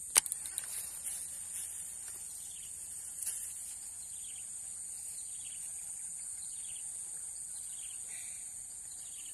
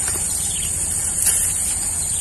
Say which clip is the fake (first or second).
second